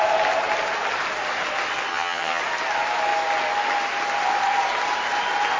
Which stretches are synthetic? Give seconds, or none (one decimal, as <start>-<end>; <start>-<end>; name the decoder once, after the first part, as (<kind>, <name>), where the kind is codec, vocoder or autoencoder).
1.9-2.4 (vocoder, HiFi-GAN)